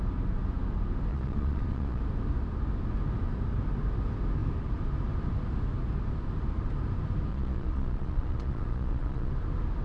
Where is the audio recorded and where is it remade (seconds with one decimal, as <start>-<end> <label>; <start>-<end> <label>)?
0.0-1.1 recorded; 1.1-2.0 remade; 2.0-7.3 recorded; 7.3-9.3 remade; 9.3-9.8 recorded